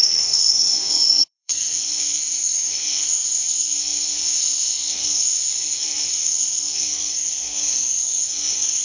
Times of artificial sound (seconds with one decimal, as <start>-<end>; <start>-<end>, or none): 0.0-8.8